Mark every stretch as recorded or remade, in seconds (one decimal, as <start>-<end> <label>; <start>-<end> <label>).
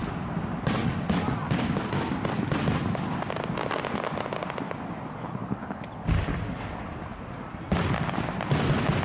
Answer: 0.0-5.4 recorded; 5.4-6.6 remade; 6.6-9.0 recorded